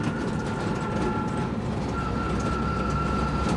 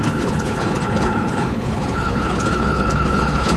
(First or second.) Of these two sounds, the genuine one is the first